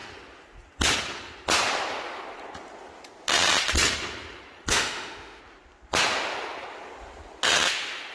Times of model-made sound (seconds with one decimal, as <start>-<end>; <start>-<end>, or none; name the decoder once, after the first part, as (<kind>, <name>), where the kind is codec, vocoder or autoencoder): 4.7-5.4 (autoencoder, DAC-VAE)